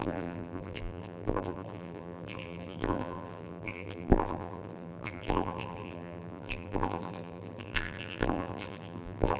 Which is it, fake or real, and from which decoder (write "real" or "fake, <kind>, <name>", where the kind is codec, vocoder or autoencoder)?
fake, vocoder, BigVGAN v2